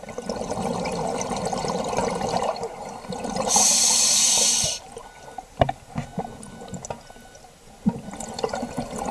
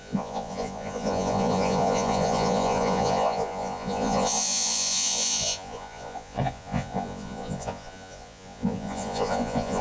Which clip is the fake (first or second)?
second